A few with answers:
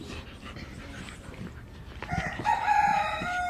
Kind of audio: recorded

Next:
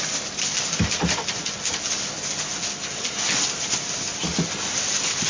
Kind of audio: recorded